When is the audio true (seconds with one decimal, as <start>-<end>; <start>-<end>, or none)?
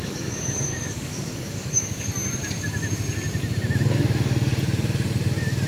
2.1-5.7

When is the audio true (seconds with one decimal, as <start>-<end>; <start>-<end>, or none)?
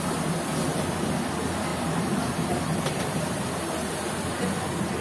0.0-0.5; 1.1-1.7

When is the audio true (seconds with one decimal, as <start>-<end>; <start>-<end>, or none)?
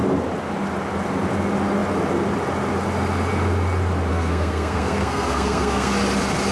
0.0-4.1; 5.9-6.5